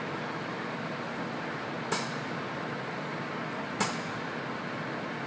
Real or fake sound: real